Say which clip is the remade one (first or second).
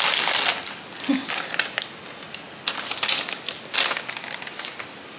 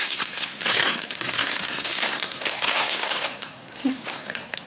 second